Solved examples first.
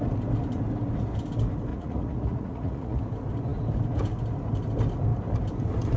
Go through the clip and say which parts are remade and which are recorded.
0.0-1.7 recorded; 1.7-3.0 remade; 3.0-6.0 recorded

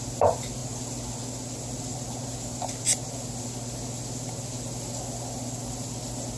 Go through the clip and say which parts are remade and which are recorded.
0.0-6.4 recorded

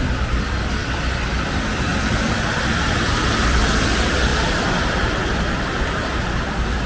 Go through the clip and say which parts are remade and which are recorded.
0.0-6.9 remade

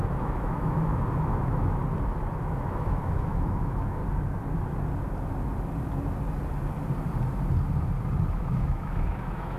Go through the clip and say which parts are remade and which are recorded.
0.0-1.8 remade; 1.8-2.3 recorded; 2.3-4.0 remade; 4.0-8.3 recorded; 8.3-9.6 remade